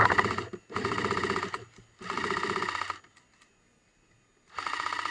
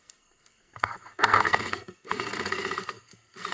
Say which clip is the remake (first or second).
second